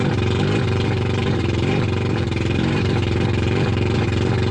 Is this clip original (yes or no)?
no